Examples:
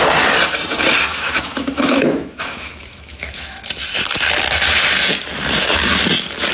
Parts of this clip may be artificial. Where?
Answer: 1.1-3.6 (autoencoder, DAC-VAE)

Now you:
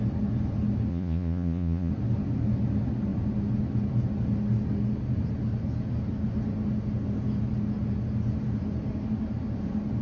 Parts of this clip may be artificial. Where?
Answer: 0.9-1.9 (vocoder, Vocos)

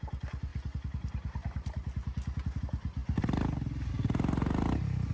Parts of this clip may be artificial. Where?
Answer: none

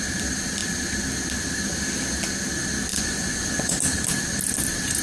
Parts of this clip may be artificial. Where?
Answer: 2.9-3.7 (vocoder, Vocos)